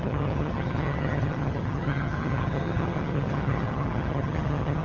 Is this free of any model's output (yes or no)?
no